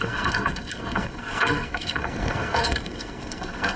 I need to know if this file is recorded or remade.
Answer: remade